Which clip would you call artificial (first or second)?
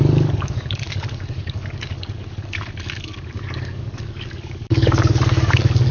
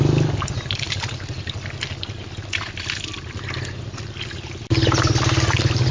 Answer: first